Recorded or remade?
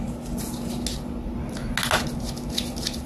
recorded